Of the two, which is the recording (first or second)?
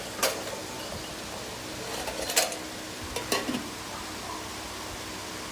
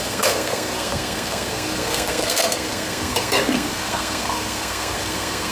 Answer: first